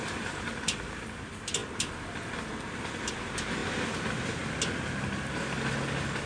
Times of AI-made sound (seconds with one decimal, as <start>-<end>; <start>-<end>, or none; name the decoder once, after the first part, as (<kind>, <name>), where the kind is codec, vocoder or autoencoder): 0.0-1.6 (vocoder, BigVGAN v2); 3.1-3.6

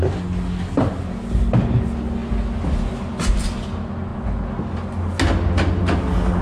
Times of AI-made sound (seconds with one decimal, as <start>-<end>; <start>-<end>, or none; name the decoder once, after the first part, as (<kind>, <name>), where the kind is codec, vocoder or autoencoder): none

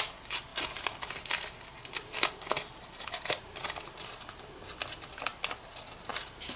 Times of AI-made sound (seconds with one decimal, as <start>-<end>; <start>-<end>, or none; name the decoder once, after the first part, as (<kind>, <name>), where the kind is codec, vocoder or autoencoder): none

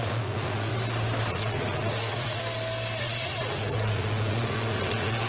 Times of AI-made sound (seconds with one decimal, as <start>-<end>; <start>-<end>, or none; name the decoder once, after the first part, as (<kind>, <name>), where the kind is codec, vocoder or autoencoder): 0.0-0.7 (vocoder, Vocos); 1.3-2.4; 3.0-5.3